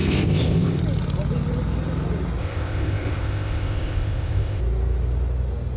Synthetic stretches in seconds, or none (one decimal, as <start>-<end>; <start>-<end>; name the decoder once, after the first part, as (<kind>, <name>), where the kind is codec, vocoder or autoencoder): 0.0-0.8 (codec, ZipCodec); 2.4-4.6